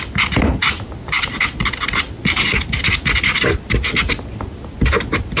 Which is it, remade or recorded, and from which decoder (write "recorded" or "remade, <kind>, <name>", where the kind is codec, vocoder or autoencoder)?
recorded